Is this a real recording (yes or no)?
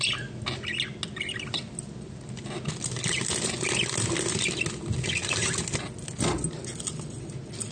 yes